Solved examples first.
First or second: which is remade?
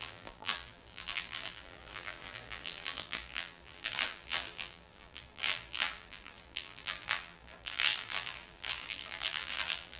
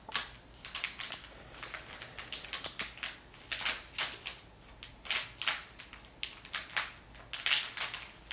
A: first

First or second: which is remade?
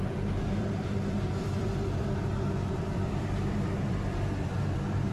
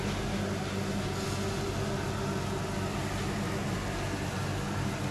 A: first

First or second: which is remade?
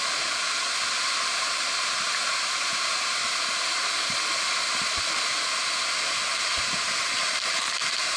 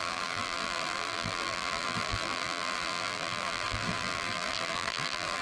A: second